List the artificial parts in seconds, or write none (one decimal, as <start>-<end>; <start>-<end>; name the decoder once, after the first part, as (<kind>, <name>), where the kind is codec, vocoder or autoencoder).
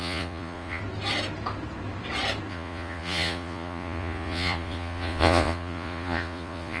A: 0.0-0.8 (vocoder, Vocos); 2.5-6.8